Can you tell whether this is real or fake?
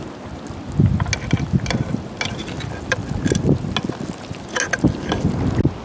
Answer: real